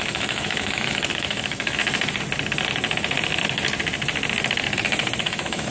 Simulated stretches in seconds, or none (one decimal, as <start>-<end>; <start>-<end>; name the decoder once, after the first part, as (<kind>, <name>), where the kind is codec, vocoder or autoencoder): 0.0-1.8 (autoencoder, DAC-VAE); 5.2-5.7